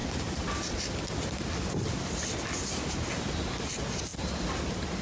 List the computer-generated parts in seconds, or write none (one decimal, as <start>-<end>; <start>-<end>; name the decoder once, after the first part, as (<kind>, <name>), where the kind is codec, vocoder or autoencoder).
0.0-2.0 (vocoder, BigVGAN v2)